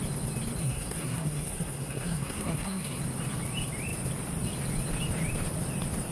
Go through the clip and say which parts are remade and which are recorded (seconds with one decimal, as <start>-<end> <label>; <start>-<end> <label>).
0.0-0.6 recorded; 0.6-3.0 remade; 3.0-6.1 recorded